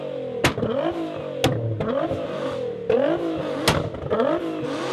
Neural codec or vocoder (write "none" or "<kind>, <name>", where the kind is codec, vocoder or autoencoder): none